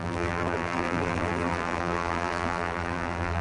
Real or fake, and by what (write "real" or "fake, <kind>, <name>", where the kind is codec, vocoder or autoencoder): fake, vocoder, BigVGAN v2